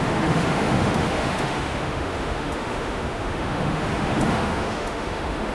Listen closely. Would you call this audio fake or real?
fake